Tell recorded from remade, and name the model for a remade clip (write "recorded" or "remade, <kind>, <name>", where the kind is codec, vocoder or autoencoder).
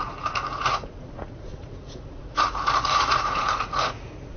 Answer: remade, vocoder, Vocos